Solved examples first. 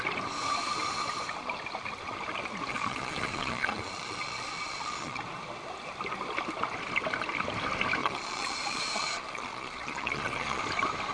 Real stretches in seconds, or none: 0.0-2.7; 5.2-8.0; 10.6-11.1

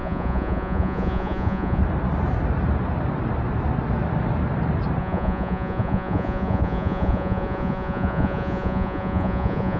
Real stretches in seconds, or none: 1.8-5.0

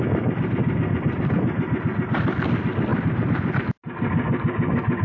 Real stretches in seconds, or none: 0.0-5.0

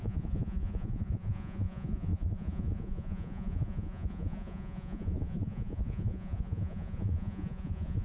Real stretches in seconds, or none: none

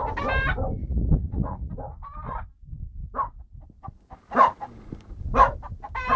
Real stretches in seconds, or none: 0.0-0.8; 1.7-6.2